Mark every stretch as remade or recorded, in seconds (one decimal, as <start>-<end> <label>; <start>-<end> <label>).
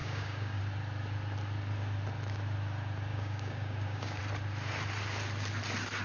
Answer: 0.0-0.6 remade; 0.6-3.1 recorded; 3.1-4.2 remade; 4.2-6.0 recorded